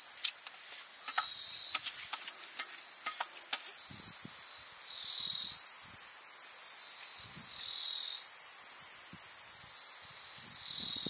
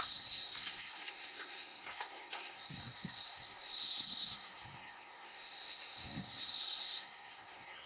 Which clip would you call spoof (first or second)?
second